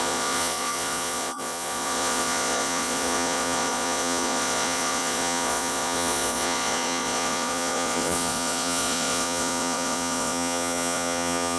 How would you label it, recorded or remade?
remade